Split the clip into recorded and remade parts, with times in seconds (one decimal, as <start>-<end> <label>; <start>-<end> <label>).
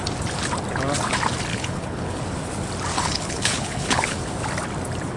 0.0-1.5 recorded; 1.5-2.2 remade; 2.2-2.9 recorded; 2.9-4.2 remade; 4.2-5.2 recorded